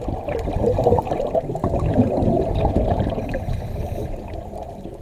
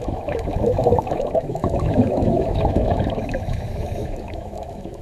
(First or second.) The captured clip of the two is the first